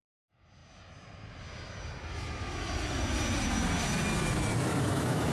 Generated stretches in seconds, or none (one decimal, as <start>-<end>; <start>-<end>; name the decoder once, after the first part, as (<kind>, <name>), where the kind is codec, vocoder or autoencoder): 4.7-5.3 (autoencoder, DAC-VAE)